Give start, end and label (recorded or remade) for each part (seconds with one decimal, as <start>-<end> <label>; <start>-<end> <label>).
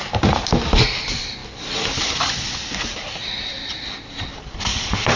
0.0-5.2 recorded